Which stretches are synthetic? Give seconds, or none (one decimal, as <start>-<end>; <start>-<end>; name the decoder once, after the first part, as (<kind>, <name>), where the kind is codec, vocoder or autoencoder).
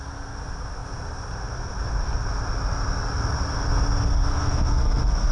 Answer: 4.3-5.3 (codec, SNAC)